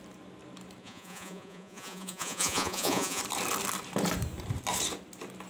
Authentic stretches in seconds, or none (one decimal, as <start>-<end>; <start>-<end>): 0.0-0.8; 3.2-5.5